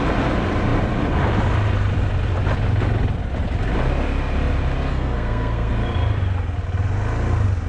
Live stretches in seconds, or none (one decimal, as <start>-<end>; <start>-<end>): 0.0-4.9; 5.7-7.7